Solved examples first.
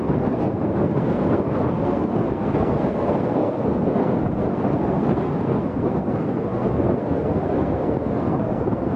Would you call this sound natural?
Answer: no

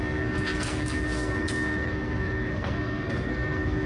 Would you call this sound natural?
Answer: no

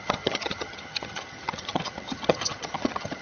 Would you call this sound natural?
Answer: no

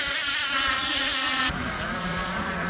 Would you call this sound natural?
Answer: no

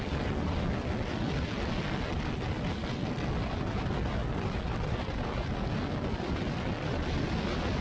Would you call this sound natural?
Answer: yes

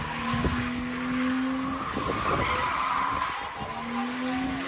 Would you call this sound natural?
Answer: yes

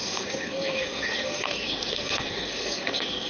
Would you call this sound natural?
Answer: no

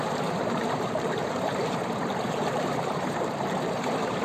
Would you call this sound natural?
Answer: no